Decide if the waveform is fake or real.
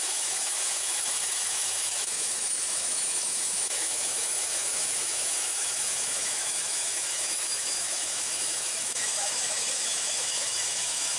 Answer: fake